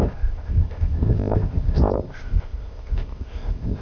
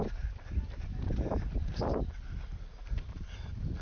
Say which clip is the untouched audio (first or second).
second